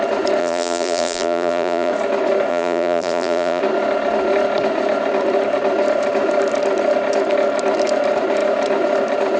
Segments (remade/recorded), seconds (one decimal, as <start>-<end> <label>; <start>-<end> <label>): 0.0-0.4 recorded; 0.4-1.9 remade; 1.9-2.5 recorded; 2.5-3.6 remade; 3.6-9.4 recorded